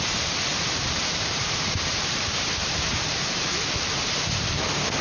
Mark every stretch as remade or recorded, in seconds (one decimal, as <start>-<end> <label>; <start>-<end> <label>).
0.0-0.5 recorded; 0.5-3.5 remade; 3.5-5.0 recorded